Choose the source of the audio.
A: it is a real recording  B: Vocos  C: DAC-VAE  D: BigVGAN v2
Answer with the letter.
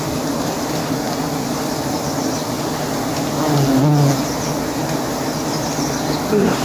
A